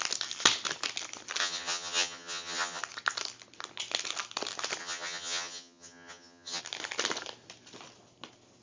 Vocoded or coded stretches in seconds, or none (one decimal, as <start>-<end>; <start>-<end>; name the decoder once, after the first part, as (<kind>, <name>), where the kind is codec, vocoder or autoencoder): 1.4-2.8 (vocoder, HiFi-GAN); 4.8-6.6